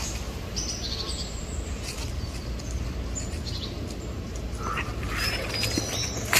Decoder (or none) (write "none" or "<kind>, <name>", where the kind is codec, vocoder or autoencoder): none